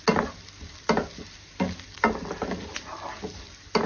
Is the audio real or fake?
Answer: real